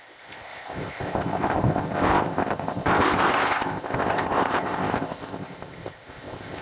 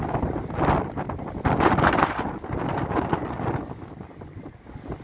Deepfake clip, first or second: first